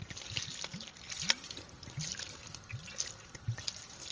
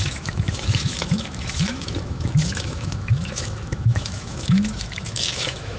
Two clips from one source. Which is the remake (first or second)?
second